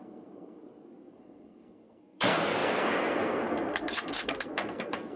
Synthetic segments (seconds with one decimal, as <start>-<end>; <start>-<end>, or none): 0.0-5.2